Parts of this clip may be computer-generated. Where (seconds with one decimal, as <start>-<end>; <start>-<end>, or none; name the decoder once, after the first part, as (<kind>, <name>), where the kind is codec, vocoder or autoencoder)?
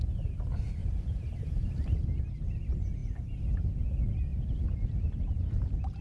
0.8-2.0 (vocoder, BigVGAN v2); 4.3-5.6